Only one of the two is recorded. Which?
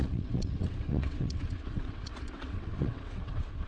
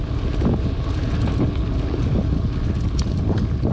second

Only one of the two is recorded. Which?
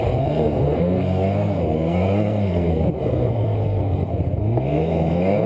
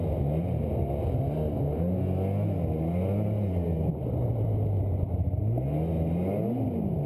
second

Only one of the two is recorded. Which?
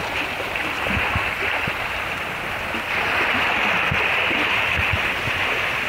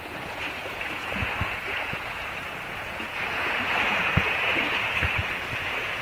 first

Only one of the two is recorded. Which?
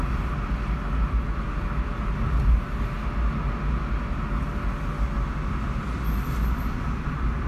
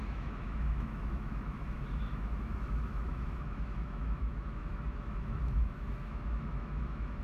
first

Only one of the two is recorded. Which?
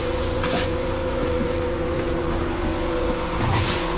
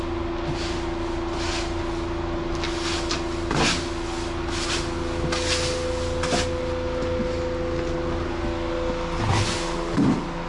second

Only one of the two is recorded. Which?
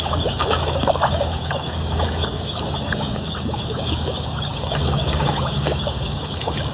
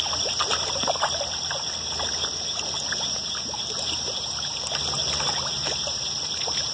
second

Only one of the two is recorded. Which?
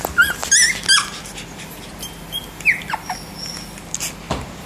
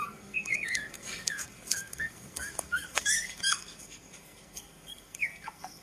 first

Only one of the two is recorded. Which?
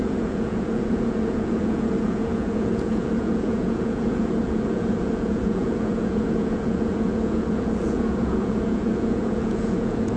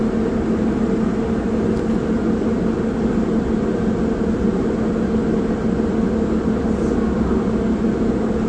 second